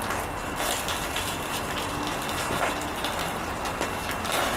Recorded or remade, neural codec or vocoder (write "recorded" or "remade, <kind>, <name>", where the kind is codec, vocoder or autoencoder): recorded